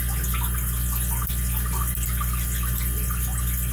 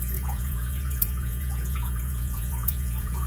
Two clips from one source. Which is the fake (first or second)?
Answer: second